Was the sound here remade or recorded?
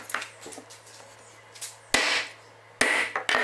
recorded